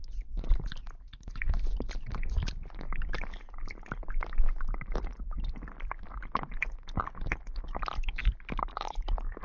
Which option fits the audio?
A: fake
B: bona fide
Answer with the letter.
B